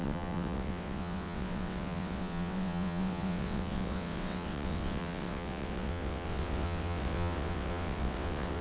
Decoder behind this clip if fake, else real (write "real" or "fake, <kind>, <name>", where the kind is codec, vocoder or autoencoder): fake, vocoder, WaveNeXt